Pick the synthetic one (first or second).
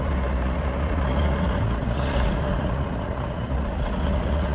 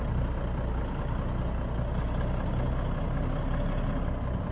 first